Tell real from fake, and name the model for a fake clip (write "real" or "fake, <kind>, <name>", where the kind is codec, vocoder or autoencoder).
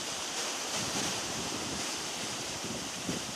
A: fake, vocoder, BigVGAN v2